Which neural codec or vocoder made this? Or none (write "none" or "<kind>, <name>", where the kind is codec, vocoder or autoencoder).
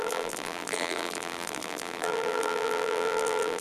vocoder, BigVGAN v2